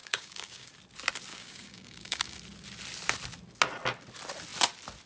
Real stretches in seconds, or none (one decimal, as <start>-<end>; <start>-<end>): 0.7-1.3; 2.4-5.1